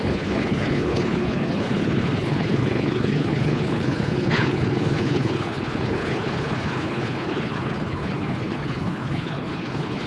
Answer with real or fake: fake